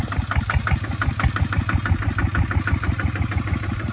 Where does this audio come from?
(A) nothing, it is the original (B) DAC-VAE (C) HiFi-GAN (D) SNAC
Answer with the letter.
A